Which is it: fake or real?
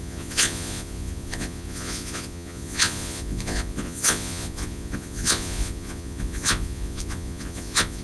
fake